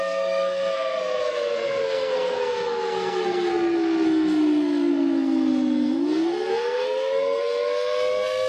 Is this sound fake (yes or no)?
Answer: yes